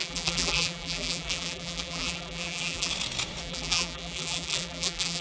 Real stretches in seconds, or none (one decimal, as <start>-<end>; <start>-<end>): 2.9-3.4